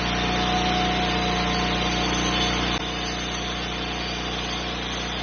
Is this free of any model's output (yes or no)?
yes